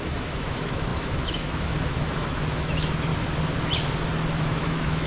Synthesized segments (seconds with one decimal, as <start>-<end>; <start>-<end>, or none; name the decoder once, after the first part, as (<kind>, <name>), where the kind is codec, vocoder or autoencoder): 0.0-3.1 (autoencoder, DAC-VAE); 4.4-5.1